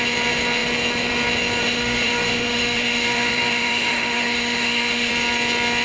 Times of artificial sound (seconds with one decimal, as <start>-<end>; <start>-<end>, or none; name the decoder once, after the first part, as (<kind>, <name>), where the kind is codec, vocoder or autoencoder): 1.6-5.1 (autoencoder, DAC-VAE)